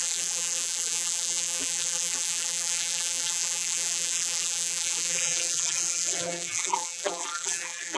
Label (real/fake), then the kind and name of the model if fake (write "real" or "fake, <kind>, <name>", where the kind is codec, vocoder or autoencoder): fake, vocoder, BigVGAN v2